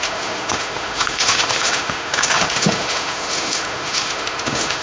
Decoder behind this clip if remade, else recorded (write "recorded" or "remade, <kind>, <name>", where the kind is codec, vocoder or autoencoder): remade, autoencoder, DAC-VAE